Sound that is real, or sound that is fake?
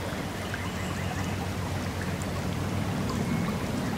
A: real